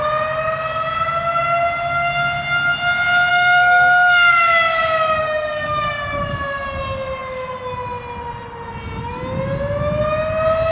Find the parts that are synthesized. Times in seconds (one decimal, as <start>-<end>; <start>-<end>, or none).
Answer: 3.3-4.3; 5.2-5.9